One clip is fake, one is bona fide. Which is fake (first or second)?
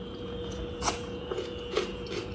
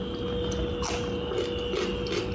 first